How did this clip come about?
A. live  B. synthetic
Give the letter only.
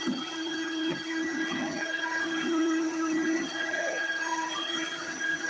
B